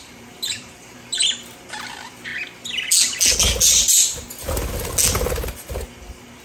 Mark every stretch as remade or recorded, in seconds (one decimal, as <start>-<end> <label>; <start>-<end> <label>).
0.0-1.2 remade; 1.2-1.9 recorded; 1.9-2.3 remade; 2.3-6.4 recorded